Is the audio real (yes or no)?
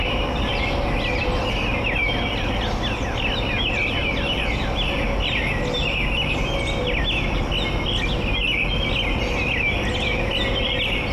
yes